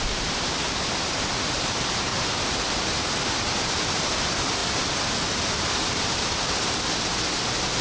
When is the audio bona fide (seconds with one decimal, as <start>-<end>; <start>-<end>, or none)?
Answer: 0.0-2.1; 3.9-7.8